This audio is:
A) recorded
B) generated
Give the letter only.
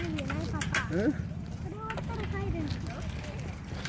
A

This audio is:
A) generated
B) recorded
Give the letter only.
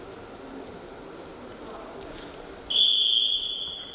B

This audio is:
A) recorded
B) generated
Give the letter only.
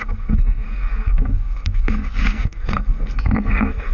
B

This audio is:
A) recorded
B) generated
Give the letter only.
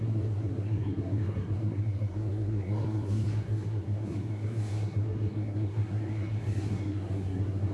B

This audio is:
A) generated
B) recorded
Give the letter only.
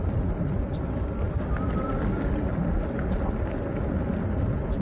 B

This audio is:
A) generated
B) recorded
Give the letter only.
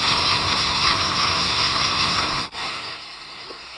A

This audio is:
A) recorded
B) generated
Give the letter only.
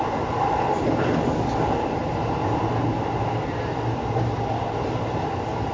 A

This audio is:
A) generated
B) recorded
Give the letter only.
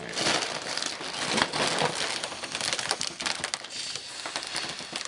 B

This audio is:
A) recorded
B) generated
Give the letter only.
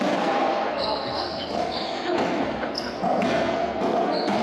B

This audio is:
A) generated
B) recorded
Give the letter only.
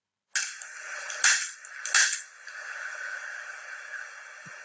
B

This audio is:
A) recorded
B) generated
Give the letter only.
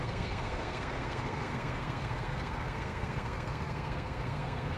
B